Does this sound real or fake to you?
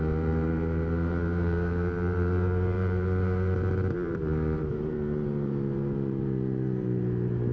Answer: fake